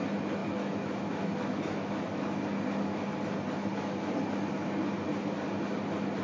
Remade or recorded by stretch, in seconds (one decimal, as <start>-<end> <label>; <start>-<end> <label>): 0.0-0.4 recorded; 0.4-2.4 remade; 2.4-6.2 recorded